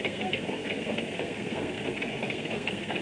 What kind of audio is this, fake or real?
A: fake